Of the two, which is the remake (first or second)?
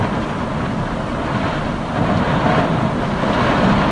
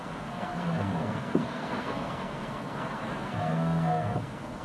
second